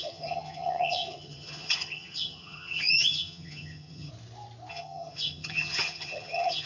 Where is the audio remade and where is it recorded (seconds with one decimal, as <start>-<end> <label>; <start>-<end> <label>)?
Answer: 0.0-4.1 remade; 4.1-4.7 recorded; 4.7-6.7 remade